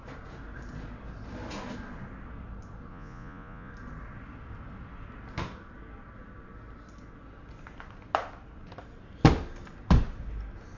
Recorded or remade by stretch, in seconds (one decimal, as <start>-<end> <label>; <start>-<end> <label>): 0.0-2.9 recorded; 2.9-3.7 remade; 3.7-10.8 recorded